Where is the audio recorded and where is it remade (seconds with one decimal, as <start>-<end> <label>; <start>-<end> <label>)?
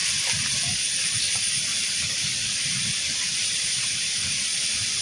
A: 0.0-1.2 recorded; 1.2-1.6 remade; 1.6-3.4 recorded; 3.4-4.5 remade; 4.5-5.0 recorded